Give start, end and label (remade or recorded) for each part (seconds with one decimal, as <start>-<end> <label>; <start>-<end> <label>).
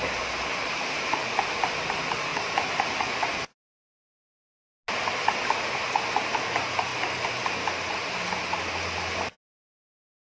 0.0-10.3 recorded